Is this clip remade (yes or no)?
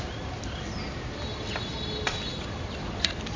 no